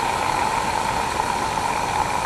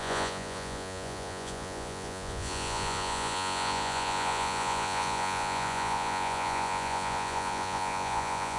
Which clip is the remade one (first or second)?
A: second